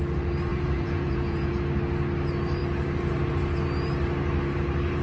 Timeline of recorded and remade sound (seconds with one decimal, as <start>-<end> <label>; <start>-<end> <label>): 0.0-0.5 recorded; 0.5-1.6 remade; 1.6-5.0 recorded